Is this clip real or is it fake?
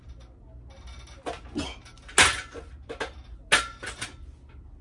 real